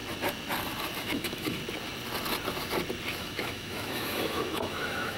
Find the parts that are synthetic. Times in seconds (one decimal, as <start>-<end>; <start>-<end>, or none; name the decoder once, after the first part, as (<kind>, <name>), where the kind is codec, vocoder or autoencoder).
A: 1.0-1.6 (autoencoder, DAC-VAE); 3.2-5.2